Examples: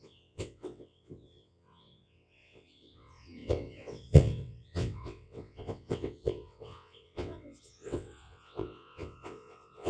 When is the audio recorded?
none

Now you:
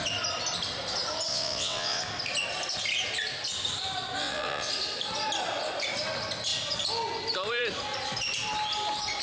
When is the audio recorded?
0.0-1.3; 2.0-4.2; 4.7-9.2

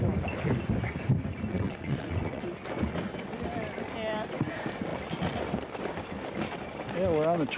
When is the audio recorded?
0.0-1.5; 2.4-7.6

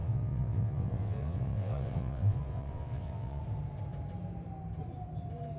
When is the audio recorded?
3.4-5.6

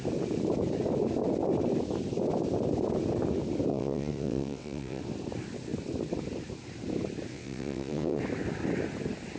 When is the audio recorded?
0.0-3.7; 5.0-7.3; 8.2-9.4